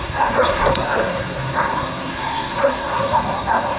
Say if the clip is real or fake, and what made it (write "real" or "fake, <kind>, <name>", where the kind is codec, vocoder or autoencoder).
fake, codec, SNAC